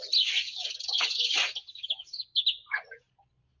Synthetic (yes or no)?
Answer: no